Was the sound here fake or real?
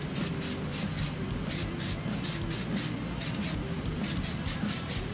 real